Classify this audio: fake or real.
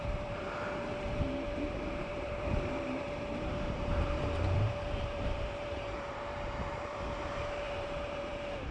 fake